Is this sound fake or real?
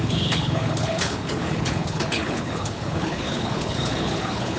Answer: fake